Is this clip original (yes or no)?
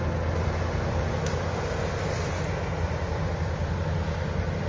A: yes